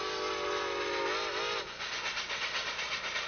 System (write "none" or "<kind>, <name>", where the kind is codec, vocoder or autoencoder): none